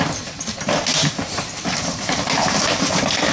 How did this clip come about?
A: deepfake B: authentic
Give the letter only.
A